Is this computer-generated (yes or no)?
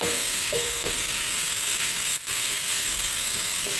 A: yes